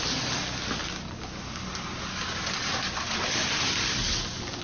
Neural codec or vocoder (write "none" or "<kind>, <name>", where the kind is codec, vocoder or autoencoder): none